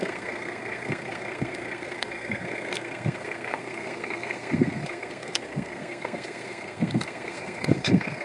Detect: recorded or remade remade